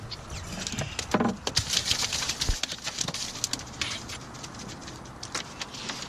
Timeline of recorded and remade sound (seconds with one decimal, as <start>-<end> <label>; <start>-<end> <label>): 0.0-6.1 recorded